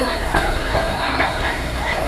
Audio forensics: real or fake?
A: fake